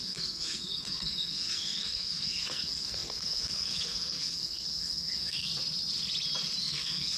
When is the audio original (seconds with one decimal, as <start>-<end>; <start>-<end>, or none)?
5.5-6.6